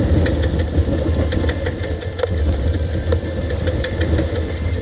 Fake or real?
real